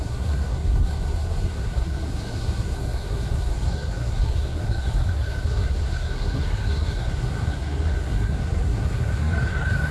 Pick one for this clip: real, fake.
fake